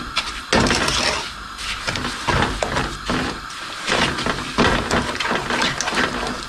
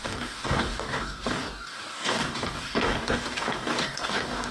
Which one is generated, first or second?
second